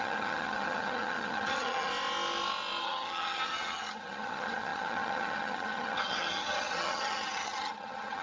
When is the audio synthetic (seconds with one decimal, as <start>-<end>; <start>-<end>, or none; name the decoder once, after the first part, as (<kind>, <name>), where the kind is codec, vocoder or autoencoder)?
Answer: 0.0-1.9 (vocoder, HiFi-GAN); 2.8-8.2